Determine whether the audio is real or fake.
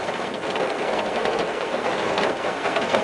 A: fake